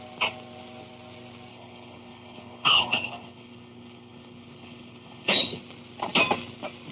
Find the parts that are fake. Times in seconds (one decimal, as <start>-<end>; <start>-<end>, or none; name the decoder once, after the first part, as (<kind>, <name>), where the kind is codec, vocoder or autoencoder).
1.5-5.6 (codec, HILCodec)

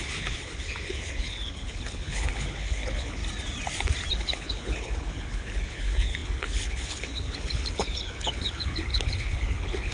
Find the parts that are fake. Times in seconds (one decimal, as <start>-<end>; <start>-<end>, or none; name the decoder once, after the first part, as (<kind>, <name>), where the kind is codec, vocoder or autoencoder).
0.0-3.2 (codec, HILCodec); 4.1-9.9

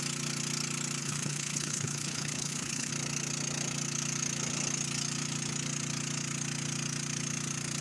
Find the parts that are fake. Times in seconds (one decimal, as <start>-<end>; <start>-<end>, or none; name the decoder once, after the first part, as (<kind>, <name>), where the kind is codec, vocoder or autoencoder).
1.0-2.9 (codec, HILCodec)

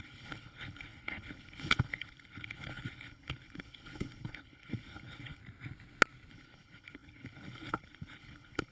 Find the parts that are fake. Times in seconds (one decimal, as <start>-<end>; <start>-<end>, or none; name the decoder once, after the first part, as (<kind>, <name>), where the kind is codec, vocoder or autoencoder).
0.0-5.4 (codec, HILCodec); 6.3-8.7

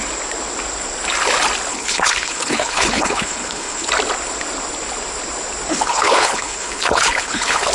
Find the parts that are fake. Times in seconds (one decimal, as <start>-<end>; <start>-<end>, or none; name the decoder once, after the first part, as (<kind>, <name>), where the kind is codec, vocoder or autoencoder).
1.7-3.9 (codec, HILCodec); 5.7-7.7

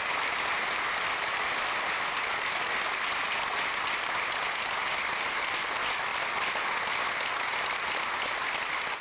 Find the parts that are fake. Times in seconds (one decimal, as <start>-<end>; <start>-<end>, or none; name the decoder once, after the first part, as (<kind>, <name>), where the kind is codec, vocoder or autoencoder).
none

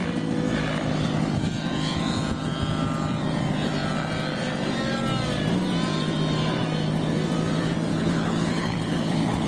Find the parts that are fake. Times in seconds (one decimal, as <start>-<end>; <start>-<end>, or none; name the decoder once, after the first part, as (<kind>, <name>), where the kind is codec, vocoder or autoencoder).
7.9-9.5 (codec, HILCodec)

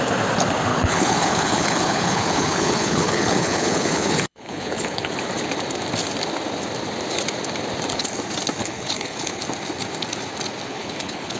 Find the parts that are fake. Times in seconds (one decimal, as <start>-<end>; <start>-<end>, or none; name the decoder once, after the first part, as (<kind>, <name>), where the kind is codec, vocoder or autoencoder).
0.7-5.1 (codec, HILCodec); 8.6-9.4; 10.7-11.4